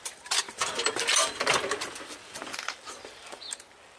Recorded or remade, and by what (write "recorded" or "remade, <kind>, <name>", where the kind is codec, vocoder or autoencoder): remade, vocoder, BigVGAN v2